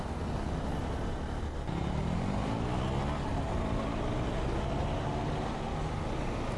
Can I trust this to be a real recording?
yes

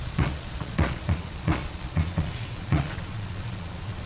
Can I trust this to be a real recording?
no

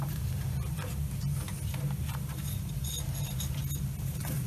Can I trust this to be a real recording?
yes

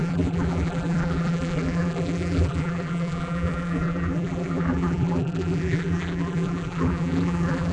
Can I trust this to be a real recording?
no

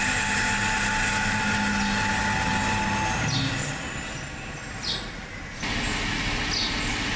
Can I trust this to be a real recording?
yes